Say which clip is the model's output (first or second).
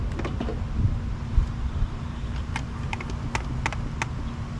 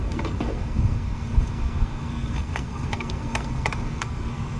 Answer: second